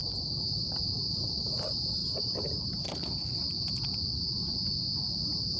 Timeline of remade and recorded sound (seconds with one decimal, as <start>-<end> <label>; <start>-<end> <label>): 0.0-5.6 recorded